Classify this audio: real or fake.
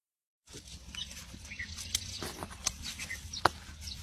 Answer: real